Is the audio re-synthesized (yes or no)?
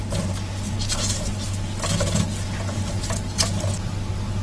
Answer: no